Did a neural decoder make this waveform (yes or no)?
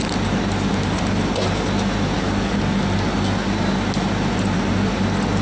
no